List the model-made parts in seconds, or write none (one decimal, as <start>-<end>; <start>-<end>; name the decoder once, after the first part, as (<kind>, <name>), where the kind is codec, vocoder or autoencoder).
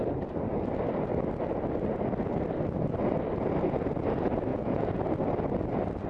4.5-5.0 (vocoder, Vocos)